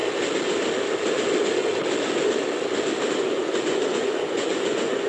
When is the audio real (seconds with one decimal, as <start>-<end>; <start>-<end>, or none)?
0.0-3.1